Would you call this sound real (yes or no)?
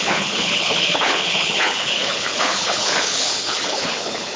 no